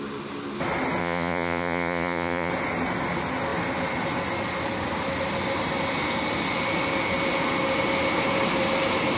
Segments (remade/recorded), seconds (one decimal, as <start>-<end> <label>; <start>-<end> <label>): 0.0-1.0 recorded; 1.0-2.5 remade; 2.5-9.2 recorded